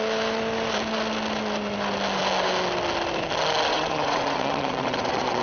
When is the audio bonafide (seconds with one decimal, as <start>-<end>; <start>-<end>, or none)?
0.0-3.7